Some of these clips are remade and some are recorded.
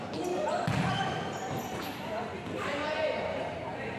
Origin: recorded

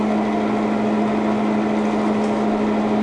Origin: recorded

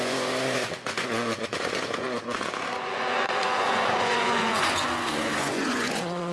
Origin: remade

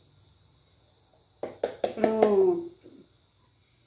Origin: recorded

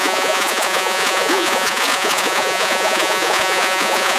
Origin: remade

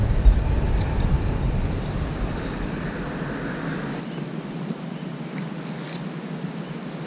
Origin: recorded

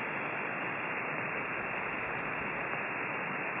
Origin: recorded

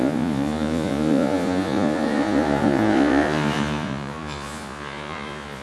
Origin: remade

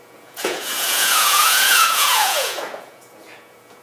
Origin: remade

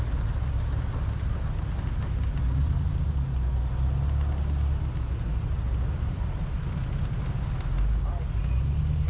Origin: recorded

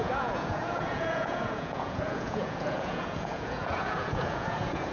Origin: remade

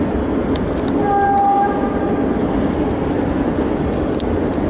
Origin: recorded